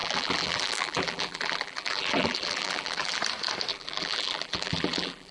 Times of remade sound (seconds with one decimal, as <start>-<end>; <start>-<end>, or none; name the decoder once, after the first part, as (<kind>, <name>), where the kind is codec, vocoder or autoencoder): 0.0-3.2 (vocoder, BigVGAN v2); 3.7-5.3